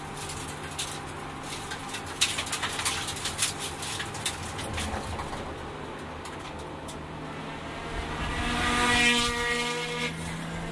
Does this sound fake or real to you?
real